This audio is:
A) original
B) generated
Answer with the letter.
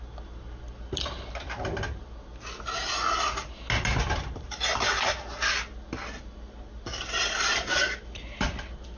A